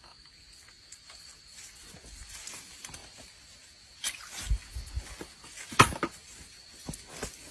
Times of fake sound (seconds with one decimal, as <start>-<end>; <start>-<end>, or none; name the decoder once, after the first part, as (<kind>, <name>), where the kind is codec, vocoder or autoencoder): none